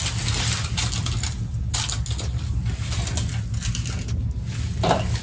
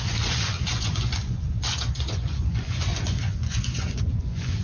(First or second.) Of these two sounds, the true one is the first